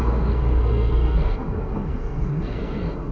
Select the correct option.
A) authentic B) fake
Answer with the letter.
B